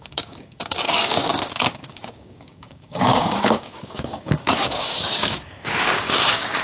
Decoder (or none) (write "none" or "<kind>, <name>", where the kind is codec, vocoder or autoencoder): codec, DAC